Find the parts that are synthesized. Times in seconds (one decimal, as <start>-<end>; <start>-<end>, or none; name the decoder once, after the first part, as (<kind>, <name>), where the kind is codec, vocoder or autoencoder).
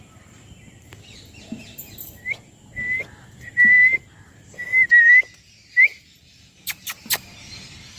0.0-0.9 (vocoder, BigVGAN v2); 5.0-8.0